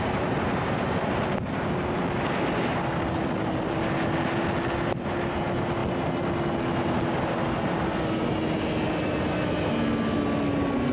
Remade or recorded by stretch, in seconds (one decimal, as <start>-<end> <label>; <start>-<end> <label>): 0.0-10.9 recorded